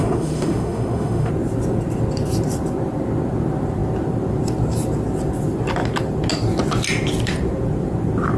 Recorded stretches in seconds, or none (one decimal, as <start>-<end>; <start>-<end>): 1.3-8.4